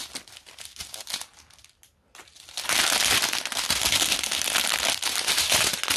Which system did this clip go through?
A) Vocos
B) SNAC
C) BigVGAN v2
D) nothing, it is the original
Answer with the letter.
D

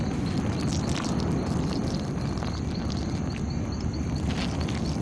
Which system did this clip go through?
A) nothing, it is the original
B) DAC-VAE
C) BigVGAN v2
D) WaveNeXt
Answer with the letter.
A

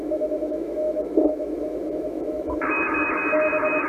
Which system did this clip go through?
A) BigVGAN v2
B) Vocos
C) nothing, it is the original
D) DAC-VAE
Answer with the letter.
D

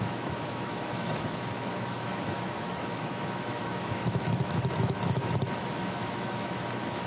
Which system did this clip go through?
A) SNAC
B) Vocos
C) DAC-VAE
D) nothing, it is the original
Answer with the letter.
C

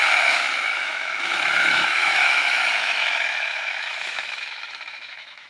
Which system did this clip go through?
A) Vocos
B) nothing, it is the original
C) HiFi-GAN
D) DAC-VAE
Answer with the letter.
D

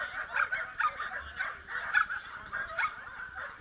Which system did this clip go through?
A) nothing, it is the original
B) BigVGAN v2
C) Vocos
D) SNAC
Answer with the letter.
B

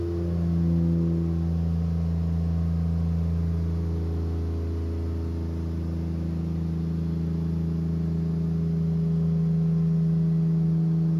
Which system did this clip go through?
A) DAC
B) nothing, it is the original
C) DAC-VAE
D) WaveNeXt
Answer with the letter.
B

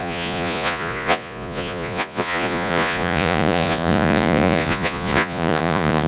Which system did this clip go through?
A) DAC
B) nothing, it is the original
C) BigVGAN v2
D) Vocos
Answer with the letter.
D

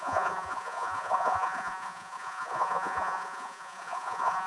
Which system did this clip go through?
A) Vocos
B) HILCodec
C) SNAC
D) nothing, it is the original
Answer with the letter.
A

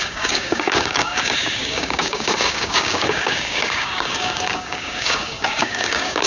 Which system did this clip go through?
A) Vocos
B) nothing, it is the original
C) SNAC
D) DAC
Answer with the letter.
D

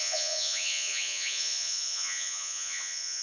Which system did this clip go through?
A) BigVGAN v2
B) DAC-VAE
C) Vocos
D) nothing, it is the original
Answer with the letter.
C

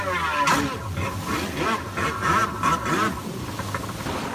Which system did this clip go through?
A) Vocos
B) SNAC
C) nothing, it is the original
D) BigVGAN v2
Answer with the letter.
C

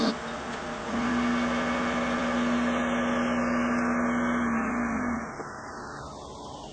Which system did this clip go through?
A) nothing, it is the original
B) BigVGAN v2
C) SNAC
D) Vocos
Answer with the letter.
A